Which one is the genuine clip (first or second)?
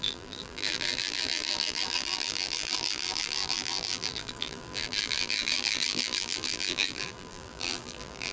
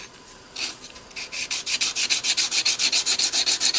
second